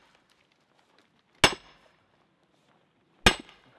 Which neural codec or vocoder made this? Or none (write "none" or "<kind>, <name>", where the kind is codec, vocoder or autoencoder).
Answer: none